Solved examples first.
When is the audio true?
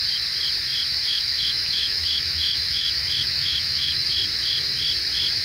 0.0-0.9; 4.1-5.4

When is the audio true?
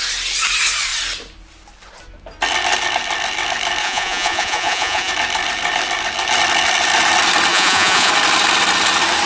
0.0-3.8; 5.1-7.5; 8.1-9.3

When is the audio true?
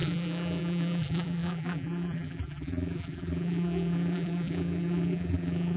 none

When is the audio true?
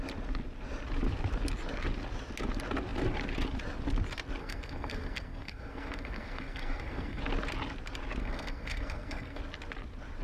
0.0-4.4; 7.2-8.2; 9.4-10.2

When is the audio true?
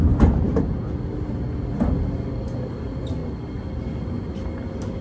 0.0-5.0